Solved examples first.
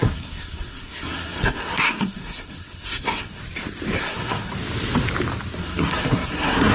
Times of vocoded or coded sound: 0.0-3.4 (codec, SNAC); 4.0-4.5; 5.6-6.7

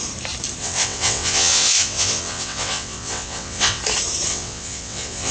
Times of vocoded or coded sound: 0.6-3.8 (vocoder, WaveNeXt); 4.3-5.3

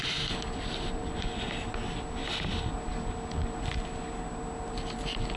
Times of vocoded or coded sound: none

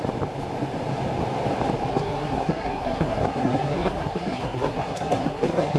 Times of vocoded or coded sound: 1.9-5.8 (codec, SNAC)

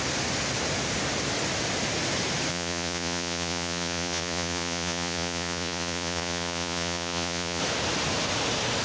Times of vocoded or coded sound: 2.5-7.6 (vocoder, Vocos)

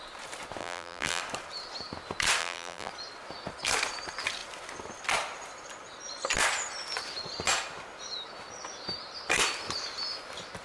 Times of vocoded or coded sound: 0.6-1.2 (vocoder, BigVGAN v2); 2.4-2.9